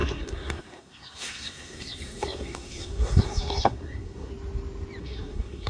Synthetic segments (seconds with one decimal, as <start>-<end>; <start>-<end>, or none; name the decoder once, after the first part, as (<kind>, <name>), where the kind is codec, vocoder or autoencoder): 0.0-4.3 (codec, SNAC); 5.0-5.7